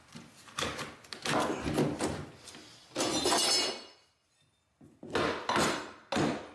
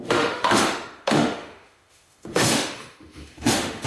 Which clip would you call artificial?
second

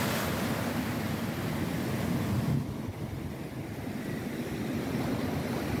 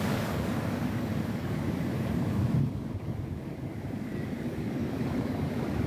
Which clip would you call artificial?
second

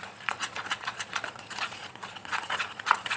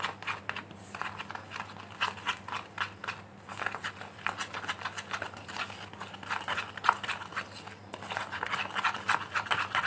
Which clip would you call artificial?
first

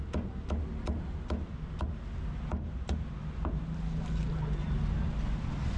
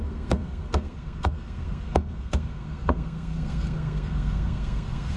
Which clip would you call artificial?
second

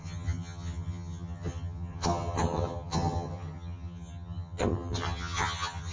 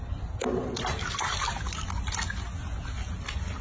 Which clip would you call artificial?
first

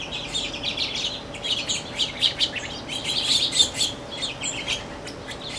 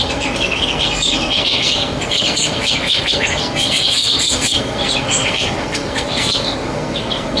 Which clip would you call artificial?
second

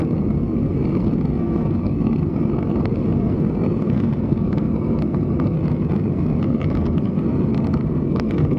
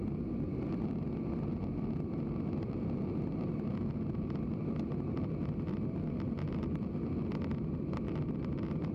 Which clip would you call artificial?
first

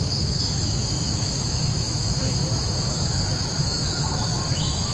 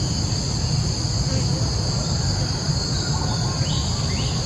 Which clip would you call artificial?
first